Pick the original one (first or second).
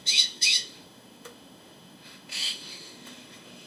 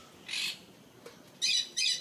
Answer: second